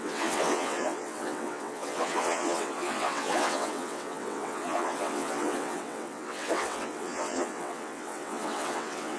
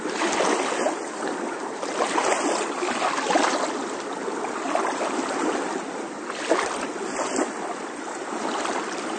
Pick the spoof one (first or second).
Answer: first